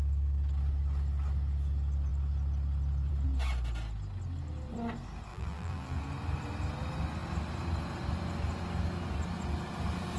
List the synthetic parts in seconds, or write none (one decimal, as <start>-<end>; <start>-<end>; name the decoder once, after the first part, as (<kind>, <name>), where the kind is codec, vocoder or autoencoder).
5.3-6.0 (vocoder, BigVGAN v2)